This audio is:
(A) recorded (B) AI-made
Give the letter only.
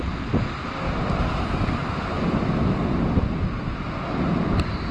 A